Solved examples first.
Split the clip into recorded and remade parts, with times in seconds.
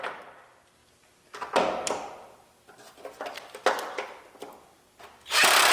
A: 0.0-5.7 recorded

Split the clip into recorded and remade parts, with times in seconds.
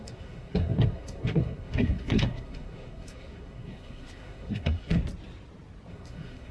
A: 0.0-5.0 remade; 5.0-5.9 recorded; 5.9-6.5 remade